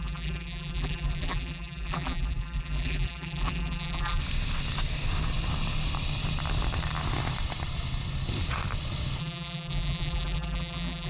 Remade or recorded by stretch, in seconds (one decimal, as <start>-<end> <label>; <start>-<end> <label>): 0.0-4.2 remade; 4.2-9.2 recorded; 9.2-11.1 remade